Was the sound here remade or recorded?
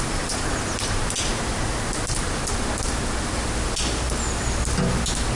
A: recorded